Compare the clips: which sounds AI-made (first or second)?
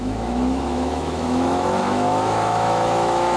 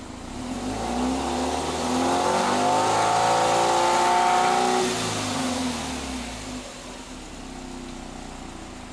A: first